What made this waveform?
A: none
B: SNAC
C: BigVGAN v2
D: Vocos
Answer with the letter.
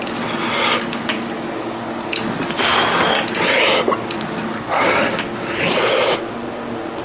A